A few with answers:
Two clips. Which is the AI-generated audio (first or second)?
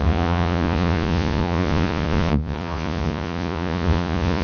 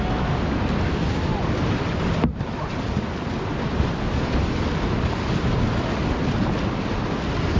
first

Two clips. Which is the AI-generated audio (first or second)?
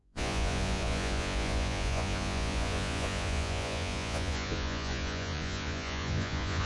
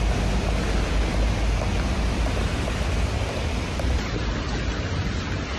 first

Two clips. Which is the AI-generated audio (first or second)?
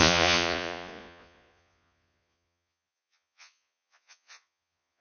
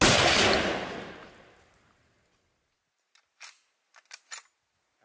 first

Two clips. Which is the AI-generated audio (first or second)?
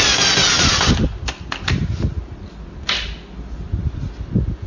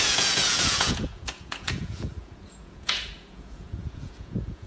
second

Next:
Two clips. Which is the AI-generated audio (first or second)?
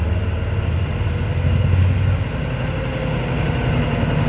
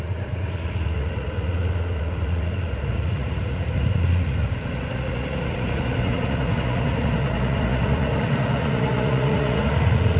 second